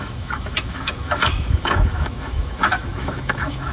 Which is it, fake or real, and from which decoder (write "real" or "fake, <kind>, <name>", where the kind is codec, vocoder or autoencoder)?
fake, autoencoder, DAC-VAE